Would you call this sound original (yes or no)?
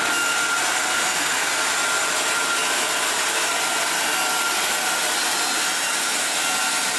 yes